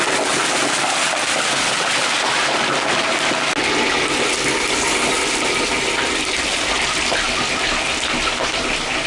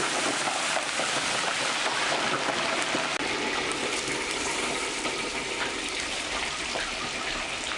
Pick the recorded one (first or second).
first